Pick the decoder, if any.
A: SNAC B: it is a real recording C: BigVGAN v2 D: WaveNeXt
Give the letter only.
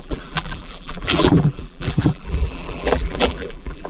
C